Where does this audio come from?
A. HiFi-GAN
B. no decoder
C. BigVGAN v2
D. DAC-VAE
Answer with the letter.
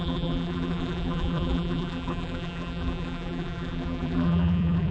C